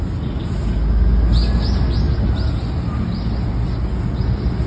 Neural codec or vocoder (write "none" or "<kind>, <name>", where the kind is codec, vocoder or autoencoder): none